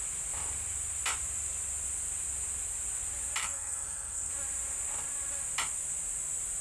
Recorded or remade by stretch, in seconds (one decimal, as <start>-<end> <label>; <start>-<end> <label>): 0.0-3.4 recorded; 3.4-4.3 remade; 4.3-6.6 recorded